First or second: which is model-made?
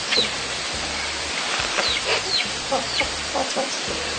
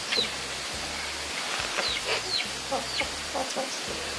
first